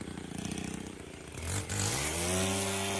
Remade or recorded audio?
recorded